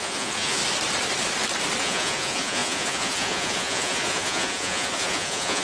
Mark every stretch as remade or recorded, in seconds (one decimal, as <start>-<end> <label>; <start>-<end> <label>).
0.0-0.6 remade; 0.6-1.8 recorded; 1.8-5.6 remade